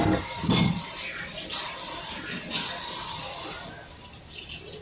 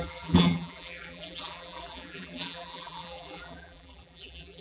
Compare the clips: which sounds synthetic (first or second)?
second